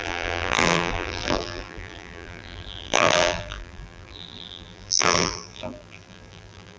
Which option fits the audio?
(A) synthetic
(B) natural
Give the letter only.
A